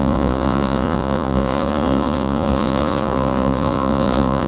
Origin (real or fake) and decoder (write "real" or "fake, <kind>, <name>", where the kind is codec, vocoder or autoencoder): fake, vocoder, Vocos